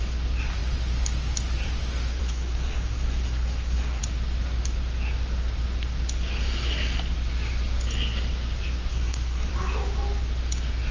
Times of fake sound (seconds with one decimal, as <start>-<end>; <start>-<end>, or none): 2.2-4.0; 8.9-9.5